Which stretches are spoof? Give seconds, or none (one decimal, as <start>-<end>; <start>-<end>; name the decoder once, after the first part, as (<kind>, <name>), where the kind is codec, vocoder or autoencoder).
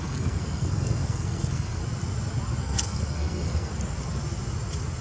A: 0.0-1.8 (codec, SNAC); 2.6-3.7